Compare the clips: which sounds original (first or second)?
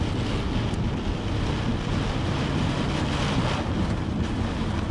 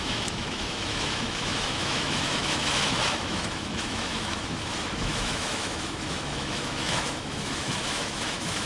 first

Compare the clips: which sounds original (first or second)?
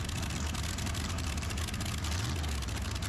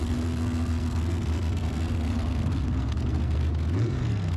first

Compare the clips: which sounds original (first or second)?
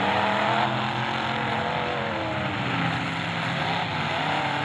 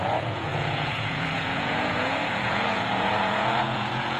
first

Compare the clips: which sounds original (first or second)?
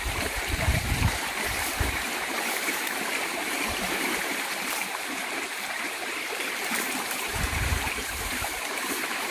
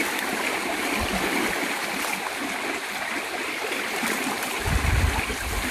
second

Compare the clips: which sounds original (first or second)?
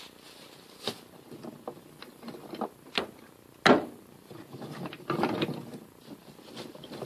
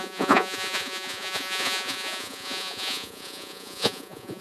first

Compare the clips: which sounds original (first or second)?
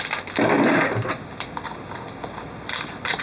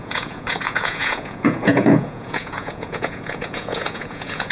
first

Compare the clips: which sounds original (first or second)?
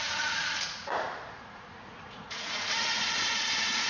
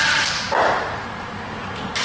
second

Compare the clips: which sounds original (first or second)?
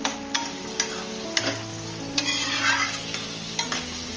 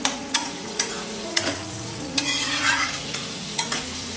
first